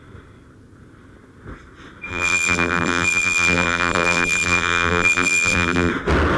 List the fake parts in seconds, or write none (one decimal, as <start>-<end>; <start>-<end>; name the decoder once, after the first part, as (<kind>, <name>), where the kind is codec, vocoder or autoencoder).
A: 2.1-5.9 (vocoder, BigVGAN v2)